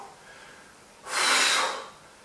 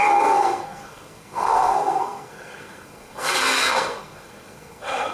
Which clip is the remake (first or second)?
second